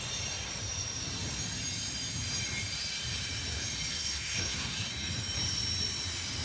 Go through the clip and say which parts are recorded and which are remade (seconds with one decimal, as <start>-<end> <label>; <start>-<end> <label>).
0.0-3.9 recorded; 3.9-4.9 remade; 4.9-6.4 recorded